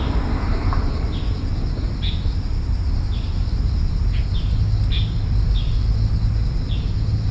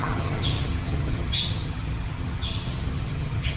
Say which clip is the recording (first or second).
first